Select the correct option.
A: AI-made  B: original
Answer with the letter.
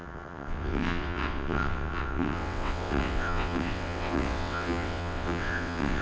A